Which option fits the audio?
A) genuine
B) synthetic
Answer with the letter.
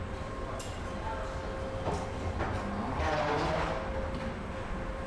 A